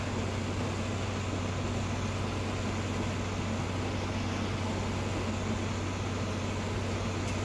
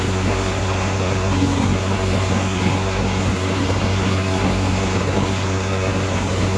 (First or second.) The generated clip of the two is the second